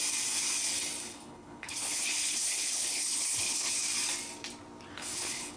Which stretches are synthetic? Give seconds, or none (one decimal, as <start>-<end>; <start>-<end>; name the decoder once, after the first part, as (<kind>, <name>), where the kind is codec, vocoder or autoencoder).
1.0-3.7 (codec, HILCodec); 4.9-5.6